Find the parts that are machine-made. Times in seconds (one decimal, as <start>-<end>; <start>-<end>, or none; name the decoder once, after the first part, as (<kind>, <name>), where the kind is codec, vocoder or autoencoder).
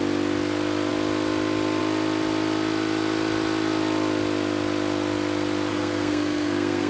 5.7-6.9 (codec, SNAC)